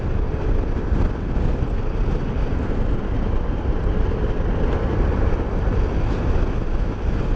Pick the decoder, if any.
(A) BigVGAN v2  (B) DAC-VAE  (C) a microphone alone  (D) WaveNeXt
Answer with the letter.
C